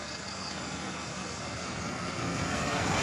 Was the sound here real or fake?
fake